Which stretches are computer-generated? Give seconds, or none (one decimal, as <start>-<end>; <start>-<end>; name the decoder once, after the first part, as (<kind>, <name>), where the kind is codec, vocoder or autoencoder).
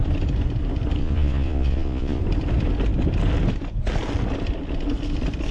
1.0-2.2 (vocoder, Vocos)